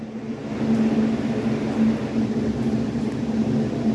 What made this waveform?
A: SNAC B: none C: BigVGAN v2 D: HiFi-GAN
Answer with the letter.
B